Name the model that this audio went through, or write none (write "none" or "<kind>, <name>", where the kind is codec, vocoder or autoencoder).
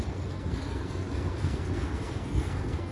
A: codec, SNAC